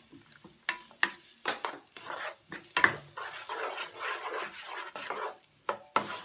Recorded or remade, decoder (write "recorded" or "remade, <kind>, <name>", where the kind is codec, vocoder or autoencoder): recorded